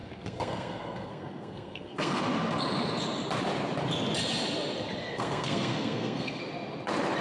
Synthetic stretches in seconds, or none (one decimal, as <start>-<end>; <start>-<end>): 0.0-2.2; 5.0-6.4